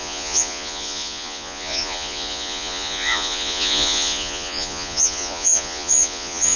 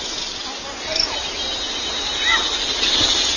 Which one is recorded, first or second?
second